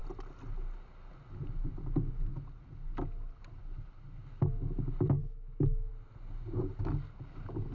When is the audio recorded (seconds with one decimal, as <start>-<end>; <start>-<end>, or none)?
0.0-5.2; 5.9-7.7

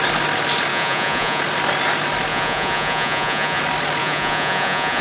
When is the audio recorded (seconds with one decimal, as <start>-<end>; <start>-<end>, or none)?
0.0-0.7; 1.4-2.3; 3.6-4.0